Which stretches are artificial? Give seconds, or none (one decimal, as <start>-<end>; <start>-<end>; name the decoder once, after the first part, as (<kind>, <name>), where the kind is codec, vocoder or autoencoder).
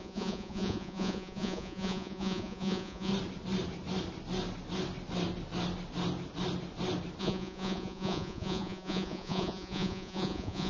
0.0-3.1 (vocoder, Vocos); 7.2-10.7